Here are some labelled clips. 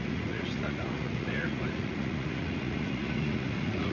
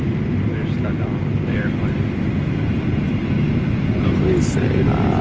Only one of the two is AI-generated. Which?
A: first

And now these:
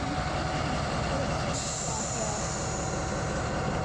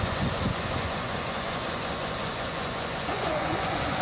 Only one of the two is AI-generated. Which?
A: second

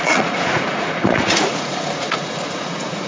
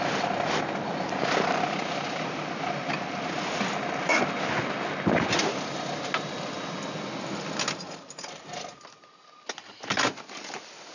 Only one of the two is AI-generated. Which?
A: first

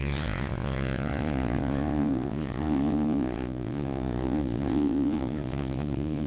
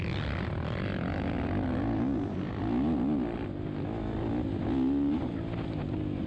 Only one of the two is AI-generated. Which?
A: first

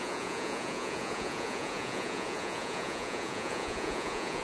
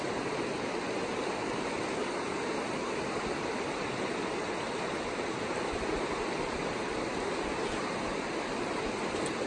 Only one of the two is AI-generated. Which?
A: first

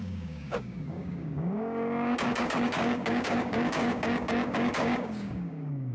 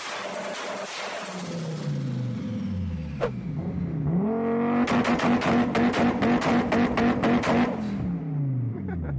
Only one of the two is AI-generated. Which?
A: first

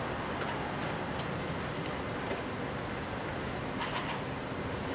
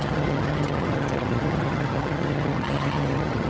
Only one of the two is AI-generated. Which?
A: second